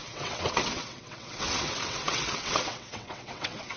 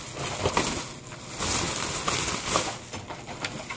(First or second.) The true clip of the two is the second